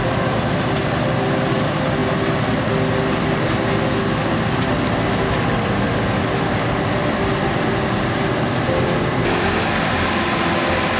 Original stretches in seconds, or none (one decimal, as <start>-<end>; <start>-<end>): 0.0-11.0